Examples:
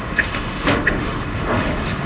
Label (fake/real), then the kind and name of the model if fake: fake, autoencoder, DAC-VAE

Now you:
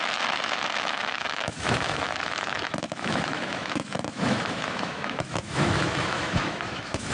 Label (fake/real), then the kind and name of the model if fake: fake, autoencoder, DAC-VAE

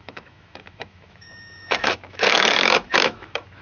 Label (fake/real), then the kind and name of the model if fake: fake, autoencoder, DAC-VAE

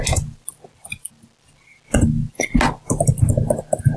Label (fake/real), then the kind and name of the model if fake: real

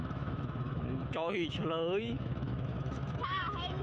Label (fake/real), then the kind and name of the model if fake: fake, autoencoder, DAC-VAE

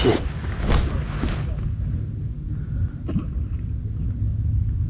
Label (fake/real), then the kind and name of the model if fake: real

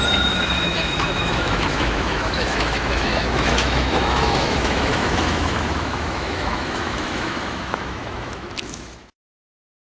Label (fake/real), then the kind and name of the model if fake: fake, autoencoder, DAC-VAE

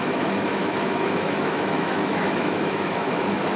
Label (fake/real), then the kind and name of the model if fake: fake, autoencoder, DAC-VAE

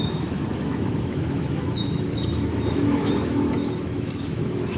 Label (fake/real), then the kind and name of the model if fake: fake, autoencoder, DAC-VAE